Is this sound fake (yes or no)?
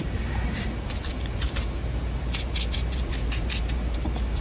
yes